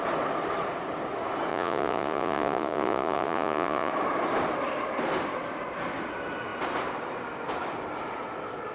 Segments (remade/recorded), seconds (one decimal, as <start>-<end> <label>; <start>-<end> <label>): 0.0-1.5 recorded; 1.5-3.9 remade; 3.9-8.7 recorded